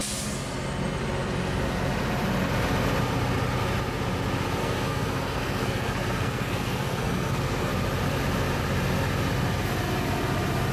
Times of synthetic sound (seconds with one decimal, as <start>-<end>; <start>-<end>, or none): 4.6-7.7